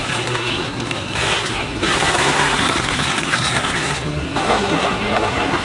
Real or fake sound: fake